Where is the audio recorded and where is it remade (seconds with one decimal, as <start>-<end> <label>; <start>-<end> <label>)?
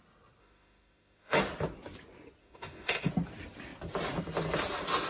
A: 0.0-0.4 recorded; 0.4-1.4 remade; 1.4-2.4 recorded; 2.4-3.1 remade; 3.1-5.1 recorded